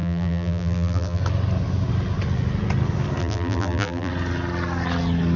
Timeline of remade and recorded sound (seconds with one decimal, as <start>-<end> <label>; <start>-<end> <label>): 0.0-1.2 remade; 1.2-3.2 recorded; 3.2-4.1 remade; 4.1-5.4 recorded

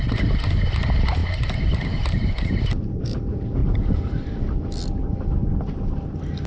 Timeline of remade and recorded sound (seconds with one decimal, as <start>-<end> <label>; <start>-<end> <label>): 0.0-1.2 recorded; 1.2-2.9 remade; 2.9-3.6 recorded; 3.6-4.6 remade; 4.6-6.5 recorded